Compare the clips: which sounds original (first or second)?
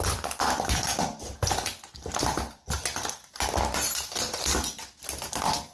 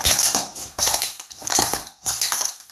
first